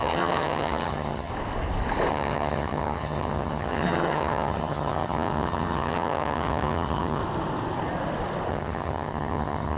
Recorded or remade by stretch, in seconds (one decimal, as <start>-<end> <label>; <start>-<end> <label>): 0.0-1.3 remade; 1.3-2.1 recorded; 2.1-7.2 remade; 7.2-8.5 recorded; 8.5-9.8 remade